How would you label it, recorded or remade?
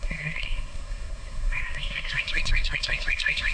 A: remade